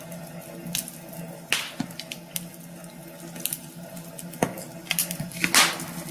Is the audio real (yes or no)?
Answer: yes